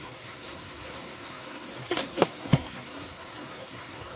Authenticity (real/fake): fake